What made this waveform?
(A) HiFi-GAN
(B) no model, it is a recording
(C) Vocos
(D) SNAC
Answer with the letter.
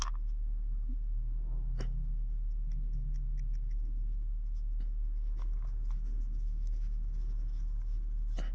B